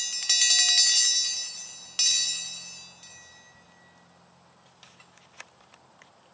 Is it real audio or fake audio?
real